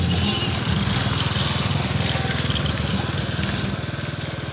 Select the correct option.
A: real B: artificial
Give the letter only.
A